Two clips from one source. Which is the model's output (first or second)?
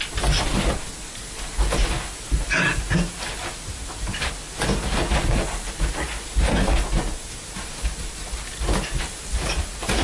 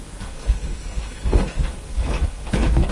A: second